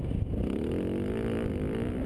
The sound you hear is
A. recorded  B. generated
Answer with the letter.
A